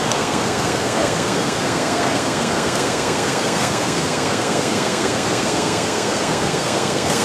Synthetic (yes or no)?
yes